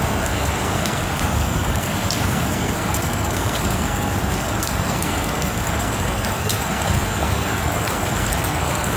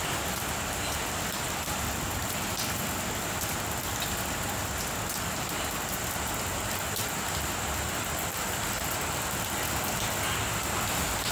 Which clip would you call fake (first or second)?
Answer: first